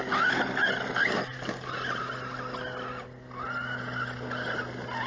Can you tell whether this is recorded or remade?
recorded